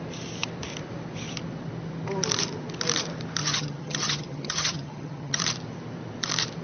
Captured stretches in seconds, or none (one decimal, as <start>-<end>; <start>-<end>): 0.0-3.4; 5.4-6.6